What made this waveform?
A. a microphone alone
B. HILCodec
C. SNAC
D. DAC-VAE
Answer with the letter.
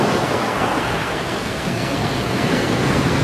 C